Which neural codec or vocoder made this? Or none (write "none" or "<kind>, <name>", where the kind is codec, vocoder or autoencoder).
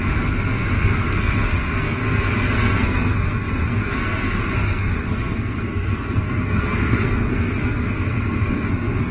codec, SNAC